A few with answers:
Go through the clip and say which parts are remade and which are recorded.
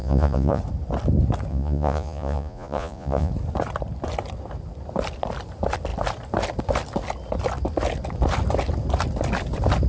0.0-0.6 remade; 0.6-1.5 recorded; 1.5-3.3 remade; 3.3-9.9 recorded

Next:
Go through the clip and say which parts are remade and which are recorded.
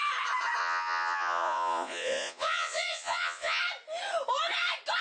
0.0-0.6 recorded; 0.6-3.6 remade; 3.6-5.0 recorded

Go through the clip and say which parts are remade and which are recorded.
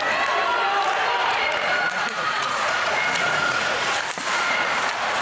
0.0-1.2 recorded; 1.2-4.1 remade; 4.1-5.2 recorded